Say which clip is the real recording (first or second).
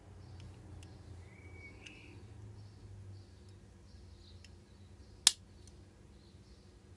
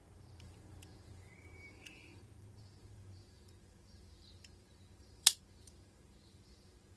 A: first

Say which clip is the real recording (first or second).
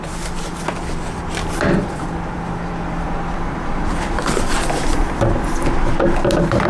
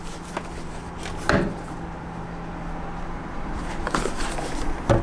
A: second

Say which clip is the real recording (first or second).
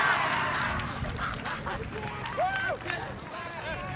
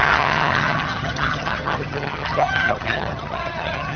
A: first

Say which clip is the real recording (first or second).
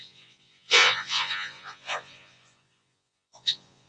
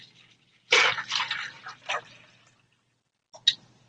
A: second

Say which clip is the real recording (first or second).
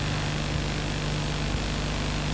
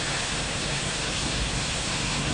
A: first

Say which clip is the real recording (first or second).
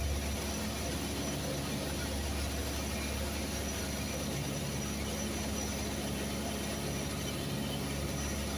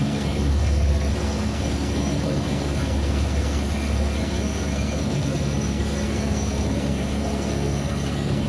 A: first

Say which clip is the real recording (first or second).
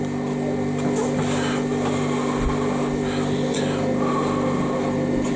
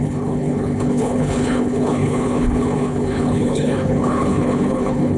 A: first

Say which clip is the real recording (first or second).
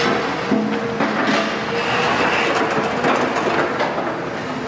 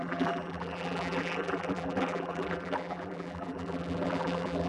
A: first